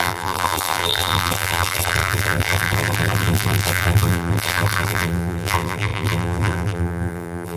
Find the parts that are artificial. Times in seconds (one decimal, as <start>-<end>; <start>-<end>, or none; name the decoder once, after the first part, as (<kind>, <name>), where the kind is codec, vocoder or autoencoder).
0.0-7.6 (vocoder, BigVGAN v2)